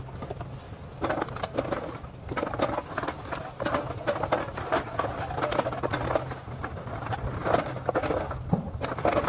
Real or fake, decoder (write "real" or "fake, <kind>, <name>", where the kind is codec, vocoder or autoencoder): real